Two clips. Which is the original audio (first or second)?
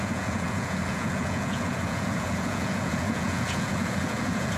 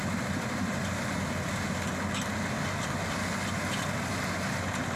second